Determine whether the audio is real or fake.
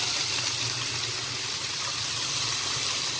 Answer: real